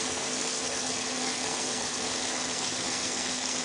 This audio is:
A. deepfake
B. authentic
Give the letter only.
A